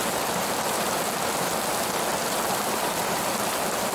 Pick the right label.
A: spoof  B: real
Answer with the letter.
B